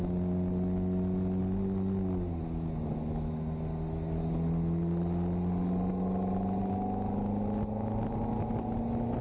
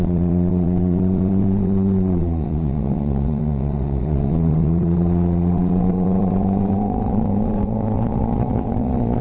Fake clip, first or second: second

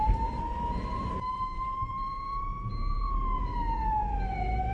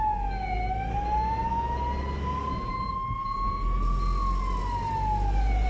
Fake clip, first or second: first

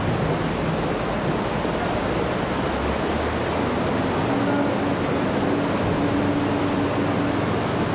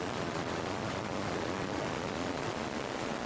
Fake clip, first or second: second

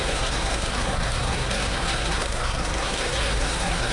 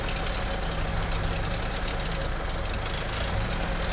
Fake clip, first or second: first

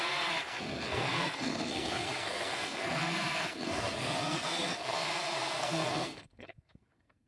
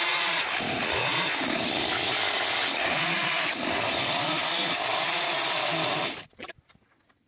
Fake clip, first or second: first